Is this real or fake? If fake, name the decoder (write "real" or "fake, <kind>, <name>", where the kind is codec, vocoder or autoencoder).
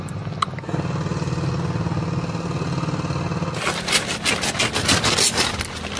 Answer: real